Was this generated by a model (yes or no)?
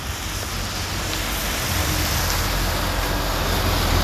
no